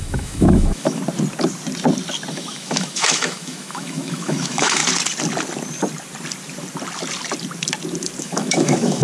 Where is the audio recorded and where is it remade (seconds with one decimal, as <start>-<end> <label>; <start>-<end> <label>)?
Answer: 0.0-1.0 remade; 1.0-2.3 recorded; 2.3-4.8 remade; 4.8-8.2 recorded; 8.2-9.0 remade